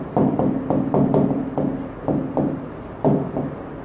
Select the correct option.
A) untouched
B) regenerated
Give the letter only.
A